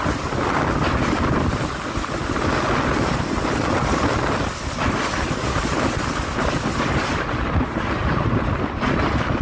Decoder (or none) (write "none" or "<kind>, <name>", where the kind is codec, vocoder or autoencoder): none